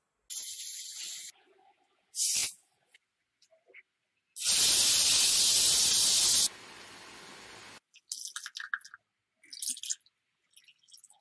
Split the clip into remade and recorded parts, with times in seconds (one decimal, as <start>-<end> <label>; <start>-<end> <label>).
0.0-11.2 recorded